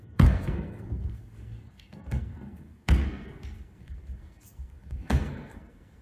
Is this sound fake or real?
fake